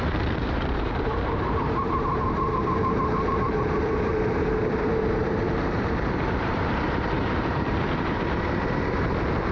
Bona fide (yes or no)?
no